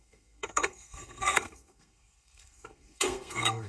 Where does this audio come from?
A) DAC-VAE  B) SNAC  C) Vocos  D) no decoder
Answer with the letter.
B